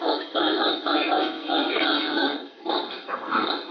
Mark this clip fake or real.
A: fake